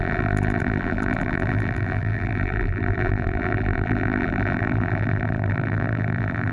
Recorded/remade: remade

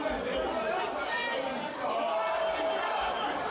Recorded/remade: remade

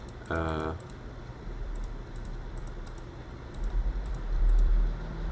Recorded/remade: remade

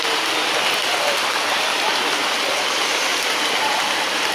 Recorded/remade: recorded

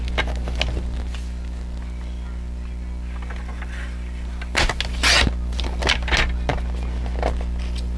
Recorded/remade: recorded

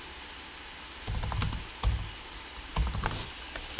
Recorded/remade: recorded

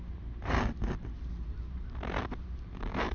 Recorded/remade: remade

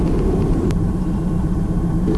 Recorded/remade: remade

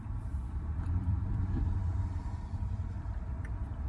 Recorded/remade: remade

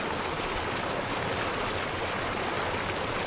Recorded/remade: recorded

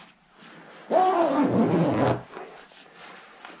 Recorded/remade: recorded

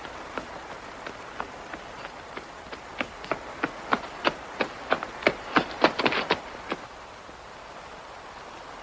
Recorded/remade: remade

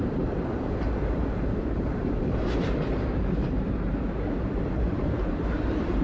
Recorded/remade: remade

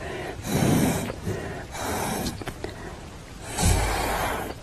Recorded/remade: remade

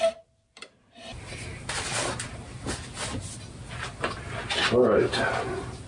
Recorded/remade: recorded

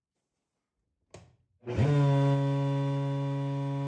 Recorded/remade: recorded